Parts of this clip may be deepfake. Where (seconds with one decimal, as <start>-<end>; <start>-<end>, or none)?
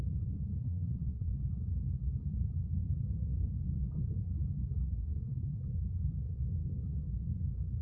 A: 0.6-1.3; 5.0-5.6